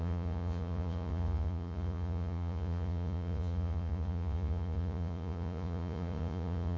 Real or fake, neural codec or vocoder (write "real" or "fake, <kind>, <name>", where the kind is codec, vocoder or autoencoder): fake, vocoder, Vocos